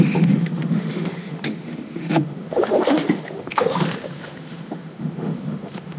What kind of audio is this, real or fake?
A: fake